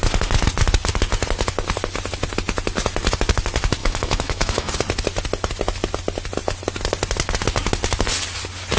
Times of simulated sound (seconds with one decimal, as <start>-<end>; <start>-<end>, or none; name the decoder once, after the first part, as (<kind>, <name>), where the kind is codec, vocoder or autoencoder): 3.8-4.7 (autoencoder, DAC-VAE)